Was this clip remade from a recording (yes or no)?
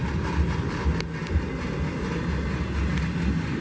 no